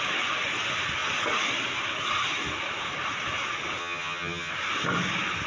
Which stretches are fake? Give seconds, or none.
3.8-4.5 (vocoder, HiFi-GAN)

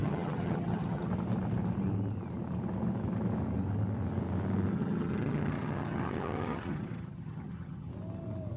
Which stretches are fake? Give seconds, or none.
0.0-1.1 (vocoder, HiFi-GAN); 4.7-7.9

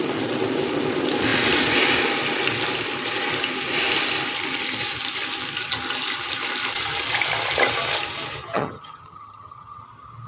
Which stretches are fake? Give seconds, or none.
8.5-9.8 (vocoder, HiFi-GAN)

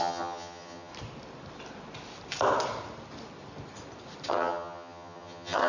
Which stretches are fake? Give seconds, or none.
0.0-0.9 (vocoder, HiFi-GAN); 4.3-5.7

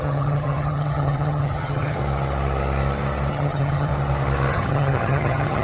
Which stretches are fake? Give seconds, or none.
0.0-2.0 (vocoder, HiFi-GAN); 3.3-3.9; 4.5-5.6

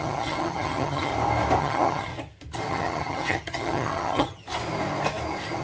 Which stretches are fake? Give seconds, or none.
0.0-1.1 (vocoder, HiFi-GAN); 1.6-2.1; 2.7-4.4

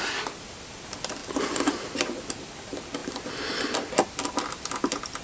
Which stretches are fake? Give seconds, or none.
none